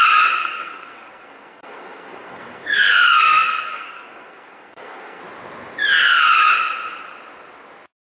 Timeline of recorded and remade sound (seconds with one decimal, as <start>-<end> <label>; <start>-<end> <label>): 0.0-0.4 recorded; 0.4-5.2 remade; 5.2-8.0 recorded